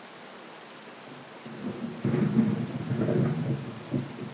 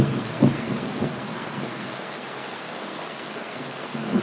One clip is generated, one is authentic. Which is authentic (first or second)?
first